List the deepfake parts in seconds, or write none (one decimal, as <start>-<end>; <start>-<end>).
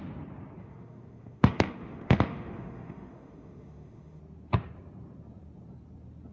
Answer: 0.6-4.2